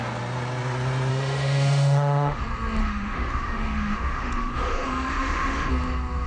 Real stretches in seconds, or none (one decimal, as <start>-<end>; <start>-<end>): 0.0-1.1; 2.4-2.8; 5.7-6.3